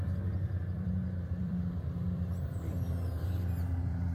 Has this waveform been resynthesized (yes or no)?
yes